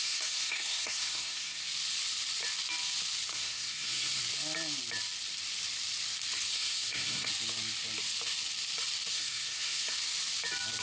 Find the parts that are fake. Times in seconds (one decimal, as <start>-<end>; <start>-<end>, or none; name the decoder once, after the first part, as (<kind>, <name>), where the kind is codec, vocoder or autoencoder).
0.0-1.6 (codec, SNAC); 3.3-4.2; 6.5-7.3; 9.1-10.0